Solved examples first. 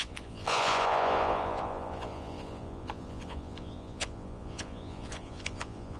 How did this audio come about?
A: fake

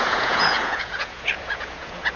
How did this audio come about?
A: fake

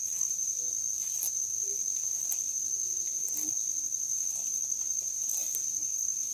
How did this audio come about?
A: real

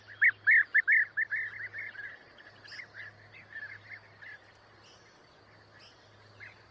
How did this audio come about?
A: real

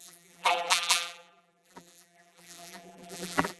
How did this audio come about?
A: fake